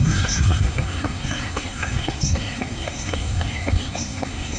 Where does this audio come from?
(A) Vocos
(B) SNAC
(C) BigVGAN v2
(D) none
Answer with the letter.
B